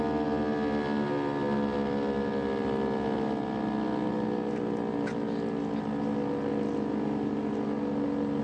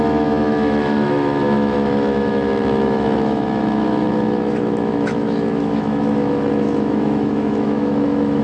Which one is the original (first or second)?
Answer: first